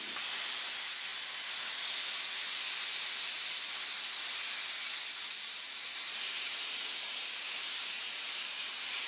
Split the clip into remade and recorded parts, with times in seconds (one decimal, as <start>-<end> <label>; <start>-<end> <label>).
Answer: 0.0-5.3 recorded; 5.3-9.1 remade